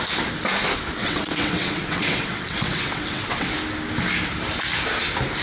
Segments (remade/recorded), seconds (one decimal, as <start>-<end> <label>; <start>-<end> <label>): 0.0-1.0 recorded; 1.0-3.5 remade; 3.5-5.4 recorded